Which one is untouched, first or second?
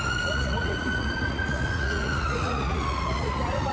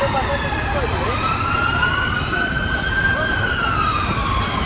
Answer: second